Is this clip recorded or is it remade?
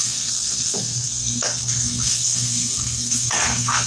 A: remade